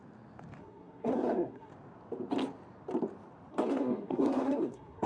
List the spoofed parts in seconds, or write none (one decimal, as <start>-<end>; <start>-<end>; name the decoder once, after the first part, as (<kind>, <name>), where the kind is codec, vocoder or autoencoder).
0.6-1.7 (codec, SNAC); 3.5-5.1